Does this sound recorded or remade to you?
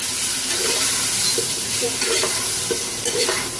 remade